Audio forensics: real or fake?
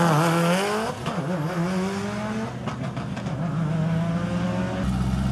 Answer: real